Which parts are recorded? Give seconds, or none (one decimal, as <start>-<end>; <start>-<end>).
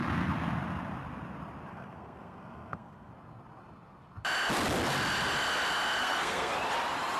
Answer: 0.0-1.7; 3.1-6.0; 6.5-7.2